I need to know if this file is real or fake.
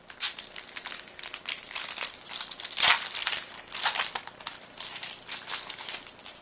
real